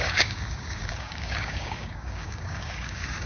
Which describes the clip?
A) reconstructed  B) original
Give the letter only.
A